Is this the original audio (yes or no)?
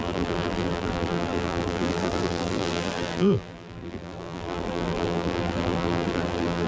no